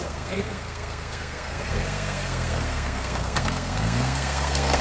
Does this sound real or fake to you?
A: fake